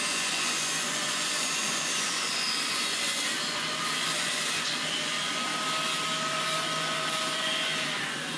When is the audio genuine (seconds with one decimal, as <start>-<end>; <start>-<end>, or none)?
5.5-6.2